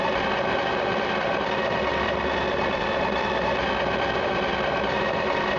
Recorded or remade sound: remade